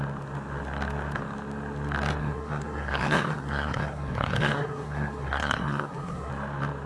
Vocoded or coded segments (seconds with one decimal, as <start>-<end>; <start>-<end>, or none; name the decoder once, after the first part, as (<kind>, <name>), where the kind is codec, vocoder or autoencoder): 2.2-6.3 (codec, SNAC)